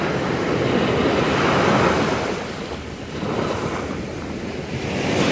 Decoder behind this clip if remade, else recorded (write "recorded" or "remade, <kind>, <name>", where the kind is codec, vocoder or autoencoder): recorded